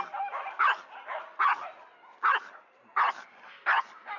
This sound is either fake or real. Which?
real